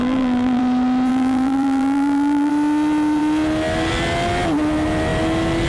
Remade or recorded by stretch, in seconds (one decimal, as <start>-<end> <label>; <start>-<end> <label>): 0.0-0.6 remade; 0.6-1.1 recorded; 1.1-2.5 remade; 2.5-5.7 recorded